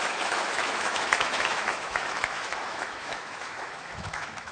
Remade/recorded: remade